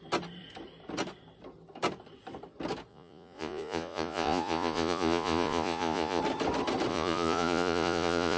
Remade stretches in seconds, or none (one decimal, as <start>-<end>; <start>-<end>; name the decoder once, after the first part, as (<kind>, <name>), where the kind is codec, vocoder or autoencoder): 2.9-6.2 (vocoder, Vocos); 6.9-8.4